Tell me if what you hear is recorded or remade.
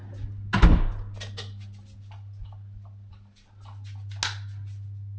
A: recorded